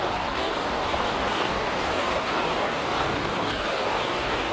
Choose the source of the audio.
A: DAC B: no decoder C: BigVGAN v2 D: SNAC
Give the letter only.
A